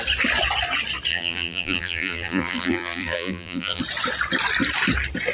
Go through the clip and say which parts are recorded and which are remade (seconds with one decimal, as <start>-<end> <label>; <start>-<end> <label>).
0.0-1.1 recorded; 1.1-3.8 remade; 3.8-5.3 recorded